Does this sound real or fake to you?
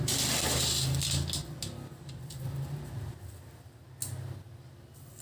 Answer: real